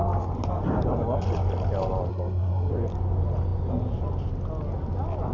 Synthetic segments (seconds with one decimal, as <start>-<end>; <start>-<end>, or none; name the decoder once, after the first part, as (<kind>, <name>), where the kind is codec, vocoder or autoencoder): 2.1-2.7 (codec, SNAC)